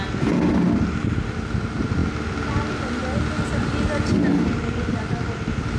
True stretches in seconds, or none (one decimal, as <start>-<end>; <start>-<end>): 0.0-5.8